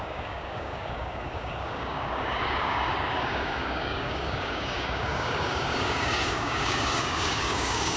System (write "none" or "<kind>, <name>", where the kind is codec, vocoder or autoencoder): codec, DAC